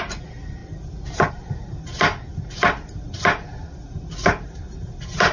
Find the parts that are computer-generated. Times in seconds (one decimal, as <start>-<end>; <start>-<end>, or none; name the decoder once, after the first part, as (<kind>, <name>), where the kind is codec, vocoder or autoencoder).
none